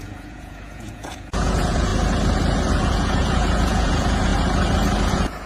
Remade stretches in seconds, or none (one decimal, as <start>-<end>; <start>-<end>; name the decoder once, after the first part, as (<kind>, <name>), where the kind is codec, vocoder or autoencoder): 0.0-1.9 (vocoder, Vocos); 2.7-4.3; 5.1-5.5